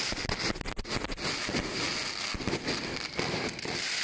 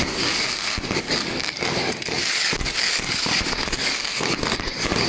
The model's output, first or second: second